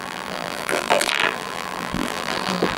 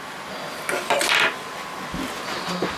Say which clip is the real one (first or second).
second